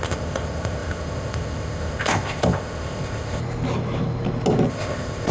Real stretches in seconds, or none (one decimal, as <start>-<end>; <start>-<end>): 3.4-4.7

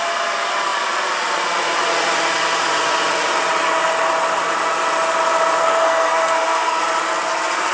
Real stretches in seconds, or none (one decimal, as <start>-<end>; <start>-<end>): 0.0-5.6; 6.8-7.7

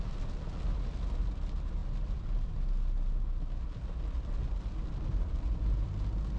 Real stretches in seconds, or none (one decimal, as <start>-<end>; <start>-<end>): 0.0-5.1; 5.9-6.4